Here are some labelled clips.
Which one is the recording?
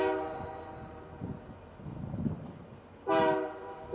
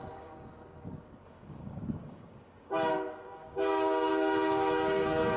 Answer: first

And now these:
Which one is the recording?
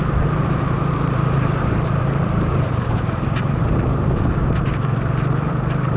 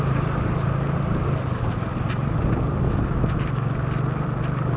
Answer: second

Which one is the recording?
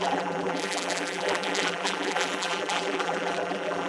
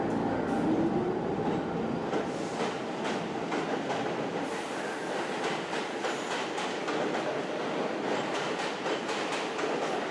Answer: second